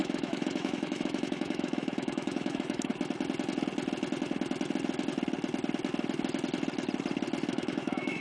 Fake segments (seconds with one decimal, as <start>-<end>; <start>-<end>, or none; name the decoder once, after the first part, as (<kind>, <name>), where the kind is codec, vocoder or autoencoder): 0.0-2.9 (autoencoder, DAC-VAE); 7.5-8.2